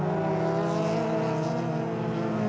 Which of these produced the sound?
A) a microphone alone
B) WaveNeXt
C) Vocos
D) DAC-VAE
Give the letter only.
A